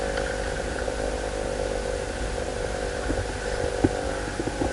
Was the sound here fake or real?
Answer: real